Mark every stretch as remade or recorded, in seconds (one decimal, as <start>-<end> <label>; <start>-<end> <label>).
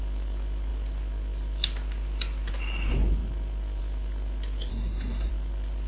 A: 0.0-4.7 recorded; 4.7-5.3 remade; 5.3-5.9 recorded